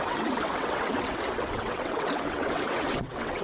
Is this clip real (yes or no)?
no